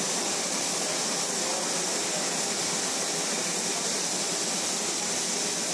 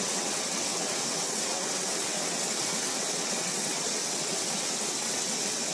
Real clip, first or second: first